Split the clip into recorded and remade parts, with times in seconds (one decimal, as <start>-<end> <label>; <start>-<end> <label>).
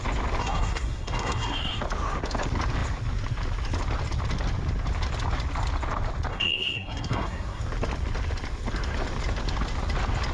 0.0-0.4 recorded; 0.4-1.8 remade; 1.8-6.3 recorded; 6.3-7.6 remade; 7.6-10.3 recorded